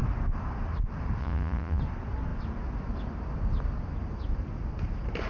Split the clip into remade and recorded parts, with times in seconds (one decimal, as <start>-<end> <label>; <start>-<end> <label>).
0.0-1.2 recorded; 1.2-1.8 remade; 1.8-5.3 recorded